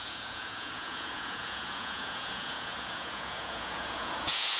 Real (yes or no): no